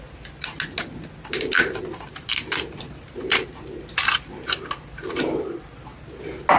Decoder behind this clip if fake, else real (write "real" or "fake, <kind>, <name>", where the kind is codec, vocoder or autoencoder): real